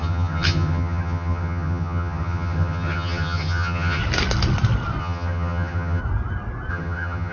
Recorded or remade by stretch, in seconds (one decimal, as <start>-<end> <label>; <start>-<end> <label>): 0.0-4.0 remade; 4.0-5.0 recorded; 5.0-6.0 remade; 6.0-6.7 recorded; 6.7-7.3 remade